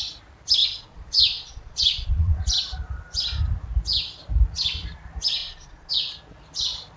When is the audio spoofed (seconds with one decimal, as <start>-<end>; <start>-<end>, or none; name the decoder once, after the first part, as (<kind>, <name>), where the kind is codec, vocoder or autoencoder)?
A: 0.6-2.4 (vocoder, Vocos); 5.4-5.9